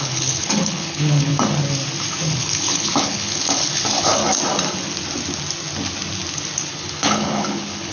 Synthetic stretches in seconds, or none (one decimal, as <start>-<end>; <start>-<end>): 0.0-1.3; 2.3-4.2; 6.7-7.9